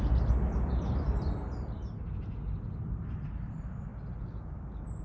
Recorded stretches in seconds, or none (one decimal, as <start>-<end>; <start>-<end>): 0.0-5.0